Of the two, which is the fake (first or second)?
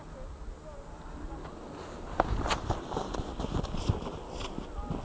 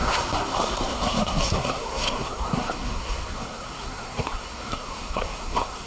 second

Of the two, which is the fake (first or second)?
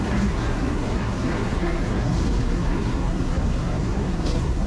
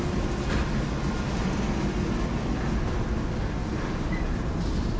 first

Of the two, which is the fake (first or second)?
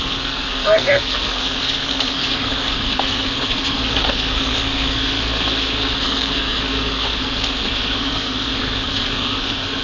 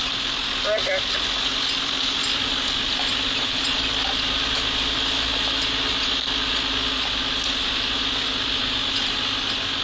first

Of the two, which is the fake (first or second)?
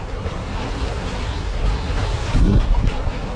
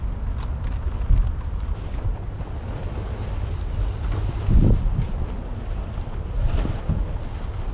first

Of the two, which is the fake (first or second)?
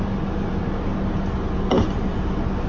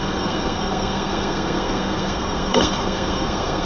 second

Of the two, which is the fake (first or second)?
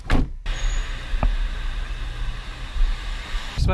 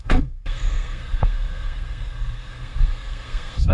second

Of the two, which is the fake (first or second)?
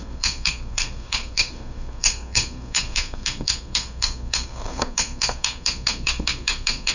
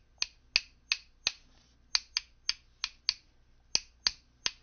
first